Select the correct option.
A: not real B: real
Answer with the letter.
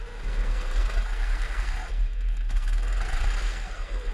A